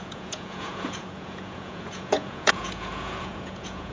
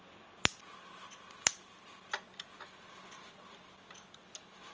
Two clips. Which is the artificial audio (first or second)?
first